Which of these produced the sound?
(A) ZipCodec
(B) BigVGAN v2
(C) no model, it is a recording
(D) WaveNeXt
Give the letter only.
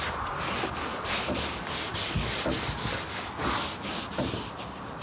C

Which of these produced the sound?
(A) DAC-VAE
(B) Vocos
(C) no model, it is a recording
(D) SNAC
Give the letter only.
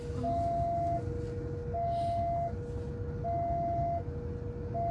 C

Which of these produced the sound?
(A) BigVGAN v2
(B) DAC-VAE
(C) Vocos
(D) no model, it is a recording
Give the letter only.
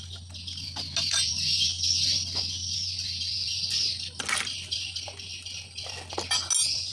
D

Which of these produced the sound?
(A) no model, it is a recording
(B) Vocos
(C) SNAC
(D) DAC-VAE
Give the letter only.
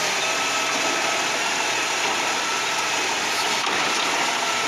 A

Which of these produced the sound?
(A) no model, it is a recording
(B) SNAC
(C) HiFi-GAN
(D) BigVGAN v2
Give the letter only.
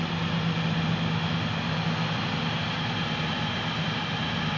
A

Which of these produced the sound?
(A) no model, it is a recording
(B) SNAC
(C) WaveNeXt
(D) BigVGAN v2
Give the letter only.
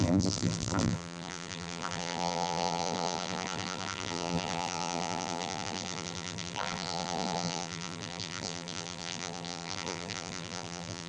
D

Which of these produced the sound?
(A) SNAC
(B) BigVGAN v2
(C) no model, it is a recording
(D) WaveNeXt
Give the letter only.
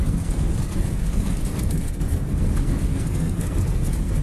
A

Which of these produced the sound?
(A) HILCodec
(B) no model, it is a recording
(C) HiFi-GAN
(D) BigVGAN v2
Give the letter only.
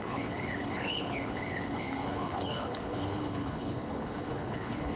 A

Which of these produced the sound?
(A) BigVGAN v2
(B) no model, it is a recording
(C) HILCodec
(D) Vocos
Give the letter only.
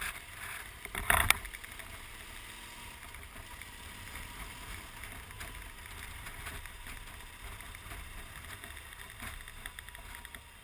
B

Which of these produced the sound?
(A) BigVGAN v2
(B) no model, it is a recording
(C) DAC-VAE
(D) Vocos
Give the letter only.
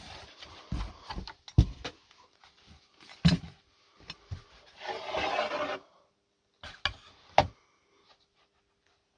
B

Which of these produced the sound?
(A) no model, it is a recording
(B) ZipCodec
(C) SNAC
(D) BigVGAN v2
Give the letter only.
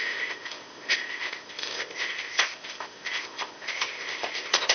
B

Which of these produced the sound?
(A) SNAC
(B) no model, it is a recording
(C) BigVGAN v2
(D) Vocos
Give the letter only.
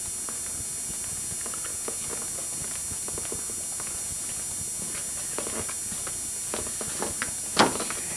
B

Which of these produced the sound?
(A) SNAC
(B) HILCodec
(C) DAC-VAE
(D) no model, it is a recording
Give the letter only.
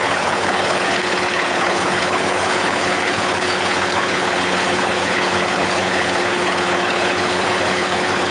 B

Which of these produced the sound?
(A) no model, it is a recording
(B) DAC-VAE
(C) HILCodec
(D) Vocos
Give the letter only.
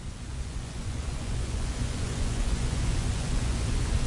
D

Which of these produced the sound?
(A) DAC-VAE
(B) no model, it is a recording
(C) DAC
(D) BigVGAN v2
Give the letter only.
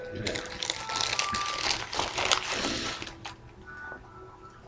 B